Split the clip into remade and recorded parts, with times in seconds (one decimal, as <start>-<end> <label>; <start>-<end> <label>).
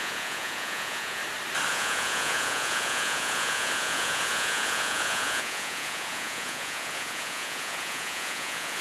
0.0-1.2 remade; 1.2-1.7 recorded; 1.7-8.8 remade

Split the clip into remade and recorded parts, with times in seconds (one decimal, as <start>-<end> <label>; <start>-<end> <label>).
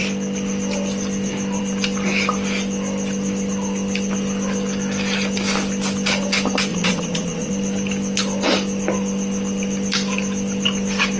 0.0-6.7 recorded; 6.7-7.5 remade; 7.5-11.2 recorded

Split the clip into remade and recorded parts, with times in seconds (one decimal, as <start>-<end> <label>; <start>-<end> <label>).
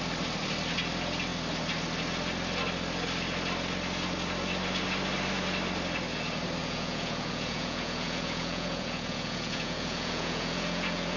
0.0-6.6 recorded; 6.6-11.2 remade